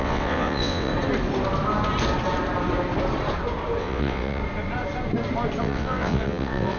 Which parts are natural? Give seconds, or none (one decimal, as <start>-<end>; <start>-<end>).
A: 0.9-3.8; 4.4-5.6